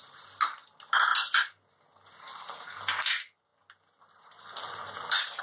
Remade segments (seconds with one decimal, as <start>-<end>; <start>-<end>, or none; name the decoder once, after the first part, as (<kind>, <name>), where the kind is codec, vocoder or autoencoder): none